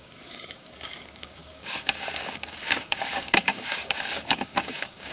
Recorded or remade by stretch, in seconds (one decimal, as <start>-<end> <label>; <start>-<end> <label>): 0.0-5.1 remade